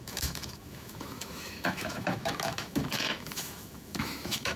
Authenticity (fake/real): fake